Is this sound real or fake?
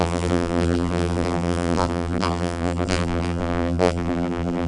fake